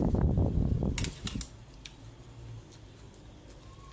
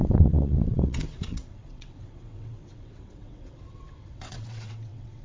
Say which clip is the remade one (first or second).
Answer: second